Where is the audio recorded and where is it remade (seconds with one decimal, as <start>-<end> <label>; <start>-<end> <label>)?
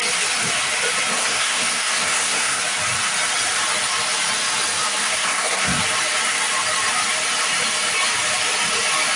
0.0-1.1 recorded; 1.1-2.6 remade; 2.6-5.0 recorded; 5.0-5.8 remade; 5.8-9.2 recorded